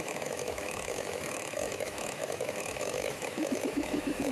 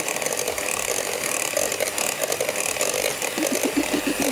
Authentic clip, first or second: second